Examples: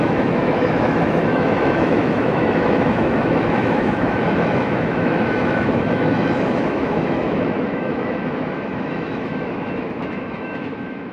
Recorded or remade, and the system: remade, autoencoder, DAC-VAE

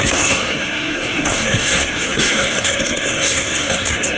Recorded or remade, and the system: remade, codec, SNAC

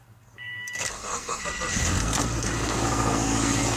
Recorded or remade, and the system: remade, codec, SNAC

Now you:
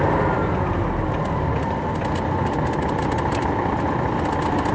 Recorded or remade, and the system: recorded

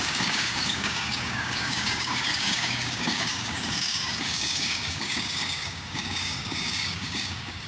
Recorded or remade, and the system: remade, codec, DAC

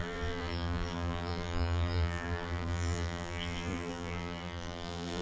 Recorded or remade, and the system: remade, vocoder, BigVGAN v2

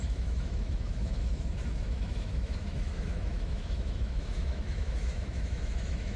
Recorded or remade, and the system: remade, autoencoder, DAC-VAE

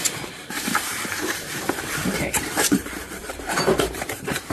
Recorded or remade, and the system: remade, vocoder, BigVGAN v2